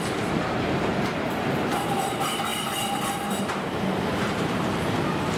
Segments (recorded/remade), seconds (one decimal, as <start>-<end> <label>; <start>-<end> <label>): 0.0-0.9 remade; 0.9-1.5 recorded; 1.5-2.5 remade; 2.5-3.3 recorded; 3.3-5.4 remade